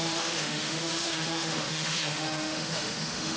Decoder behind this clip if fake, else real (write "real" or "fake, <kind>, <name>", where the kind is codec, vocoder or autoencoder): fake, autoencoder, DAC-VAE